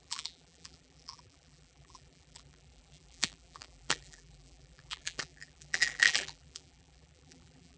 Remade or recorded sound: remade